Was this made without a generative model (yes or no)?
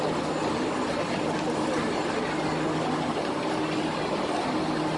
yes